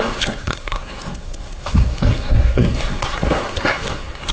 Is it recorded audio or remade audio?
remade